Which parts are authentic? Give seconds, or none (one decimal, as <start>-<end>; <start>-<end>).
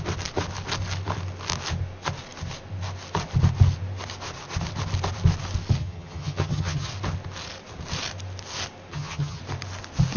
0.0-5.8; 6.9-8.9; 9.4-10.2